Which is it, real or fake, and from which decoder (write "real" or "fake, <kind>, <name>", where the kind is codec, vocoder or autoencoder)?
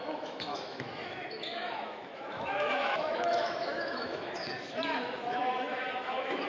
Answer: fake, autoencoder, DAC-VAE